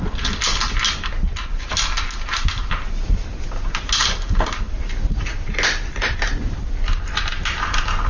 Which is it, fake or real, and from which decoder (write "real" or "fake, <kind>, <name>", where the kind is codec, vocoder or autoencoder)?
real